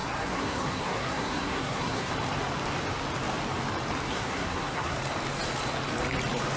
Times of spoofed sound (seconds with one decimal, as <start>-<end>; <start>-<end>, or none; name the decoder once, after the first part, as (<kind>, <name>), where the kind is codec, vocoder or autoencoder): 0.0-2.1 (codec, SNAC); 4.1-5.0